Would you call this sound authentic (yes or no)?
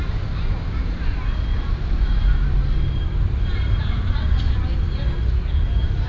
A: yes